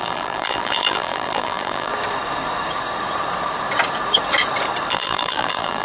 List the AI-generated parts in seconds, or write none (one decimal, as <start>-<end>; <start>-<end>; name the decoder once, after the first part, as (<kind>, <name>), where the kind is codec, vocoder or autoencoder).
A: 0.0-1.9 (vocoder, BigVGAN v2); 4.9-5.8